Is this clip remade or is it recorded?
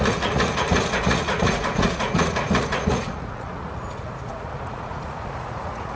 remade